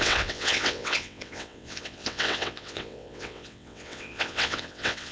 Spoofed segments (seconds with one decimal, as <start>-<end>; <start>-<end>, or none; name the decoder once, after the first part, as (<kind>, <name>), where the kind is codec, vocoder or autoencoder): 0.0-5.1 (vocoder, WaveNeXt)